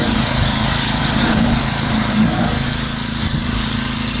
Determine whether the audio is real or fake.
fake